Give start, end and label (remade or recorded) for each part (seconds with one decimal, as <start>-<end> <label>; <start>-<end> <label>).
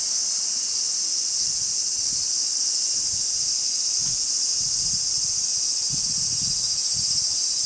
0.0-7.7 recorded